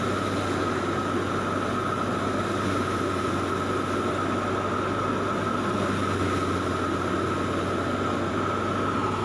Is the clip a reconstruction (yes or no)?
no